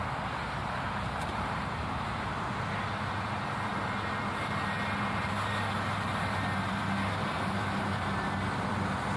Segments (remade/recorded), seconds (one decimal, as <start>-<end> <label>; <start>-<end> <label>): 0.0-0.6 recorded; 0.6-2.2 remade; 2.2-7.2 recorded; 7.2-8.2 remade; 8.2-9.2 recorded